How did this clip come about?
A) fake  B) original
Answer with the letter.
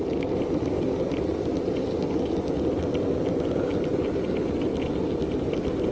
B